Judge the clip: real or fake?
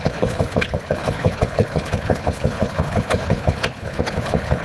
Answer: fake